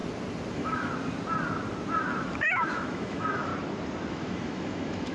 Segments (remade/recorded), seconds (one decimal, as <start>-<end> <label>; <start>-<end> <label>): 0.0-0.5 recorded; 0.5-0.9 remade; 0.9-2.4 recorded; 2.4-3.5 remade; 3.5-4.1 recorded; 4.1-5.1 remade